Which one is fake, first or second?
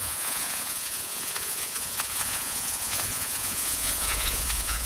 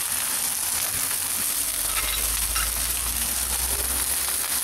first